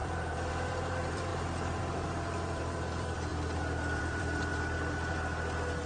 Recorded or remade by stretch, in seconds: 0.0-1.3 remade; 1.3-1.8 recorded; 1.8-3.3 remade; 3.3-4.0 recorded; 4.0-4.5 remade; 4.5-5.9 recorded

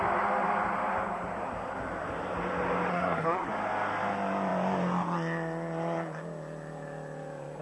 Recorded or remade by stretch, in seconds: 0.0-2.9 recorded; 2.9-3.5 remade; 3.5-7.6 recorded

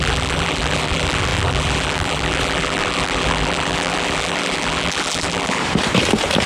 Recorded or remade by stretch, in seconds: 0.0-5.6 remade; 5.6-6.5 recorded

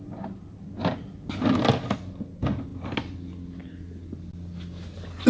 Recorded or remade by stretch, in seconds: 0.0-5.3 recorded

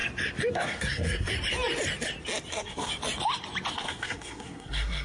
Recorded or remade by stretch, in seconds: 0.0-0.5 recorded; 0.5-1.3 remade; 1.3-2.5 recorded; 2.5-2.9 remade; 2.9-3.7 recorded; 3.7-5.0 remade

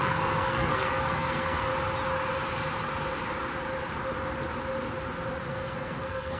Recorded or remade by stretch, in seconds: 0.0-1.7 remade; 1.7-5.5 recorded; 5.5-6.4 remade

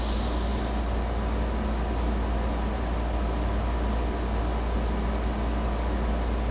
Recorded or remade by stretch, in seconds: 0.0-6.5 recorded